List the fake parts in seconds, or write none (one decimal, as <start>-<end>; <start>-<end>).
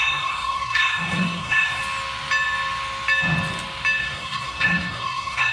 0.0-1.8; 4.0-5.5